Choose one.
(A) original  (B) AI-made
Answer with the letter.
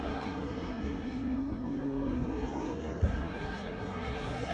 B